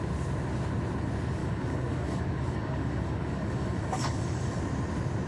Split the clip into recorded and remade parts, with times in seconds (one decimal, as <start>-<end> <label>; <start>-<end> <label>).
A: 0.0-1.4 recorded; 1.4-4.6 remade; 4.6-5.3 recorded